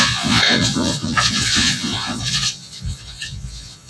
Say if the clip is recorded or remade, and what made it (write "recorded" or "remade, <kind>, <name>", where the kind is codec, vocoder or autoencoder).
remade, vocoder, Vocos